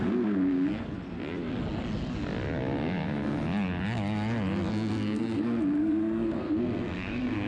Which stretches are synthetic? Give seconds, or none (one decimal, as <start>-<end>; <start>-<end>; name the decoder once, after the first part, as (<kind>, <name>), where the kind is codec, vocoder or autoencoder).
0.0-0.7 (codec, SNAC); 4.7-7.5